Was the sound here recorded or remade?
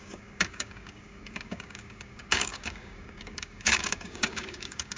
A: remade